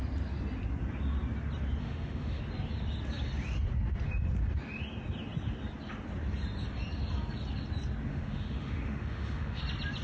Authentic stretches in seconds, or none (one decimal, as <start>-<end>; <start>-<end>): 0.0-1.8; 2.4-8.1; 9.6-10.0